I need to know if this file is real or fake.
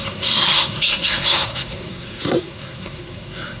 fake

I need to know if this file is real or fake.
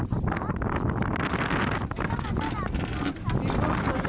real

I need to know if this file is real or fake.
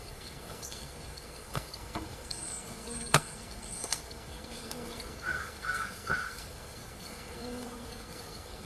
fake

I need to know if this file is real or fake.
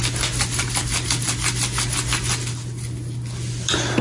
real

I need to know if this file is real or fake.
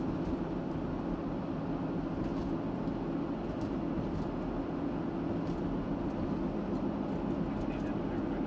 real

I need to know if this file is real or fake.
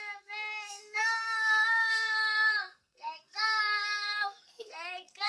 fake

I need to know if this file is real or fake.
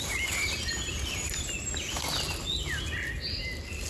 real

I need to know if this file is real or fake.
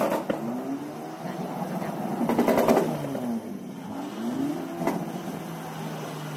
real